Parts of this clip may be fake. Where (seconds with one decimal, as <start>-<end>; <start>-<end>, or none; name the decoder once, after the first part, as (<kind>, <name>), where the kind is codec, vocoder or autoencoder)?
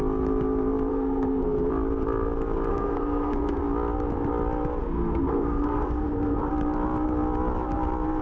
0.9-1.7 (codec, SNAC); 2.7-3.6; 4.8-6.5